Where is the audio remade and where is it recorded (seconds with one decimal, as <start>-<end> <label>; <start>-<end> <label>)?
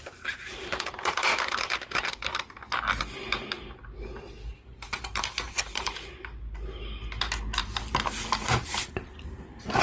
0.0-2.0 remade; 2.0-4.7 recorded; 4.7-6.3 remade; 6.3-7.6 recorded; 7.6-9.8 remade